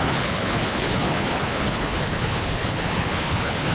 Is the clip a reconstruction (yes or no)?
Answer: yes